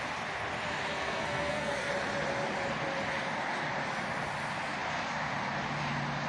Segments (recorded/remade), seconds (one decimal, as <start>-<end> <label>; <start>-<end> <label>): 0.0-0.9 recorded; 0.9-1.9 remade; 1.9-6.3 recorded